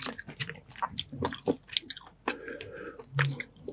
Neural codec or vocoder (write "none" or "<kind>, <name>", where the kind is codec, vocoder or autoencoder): none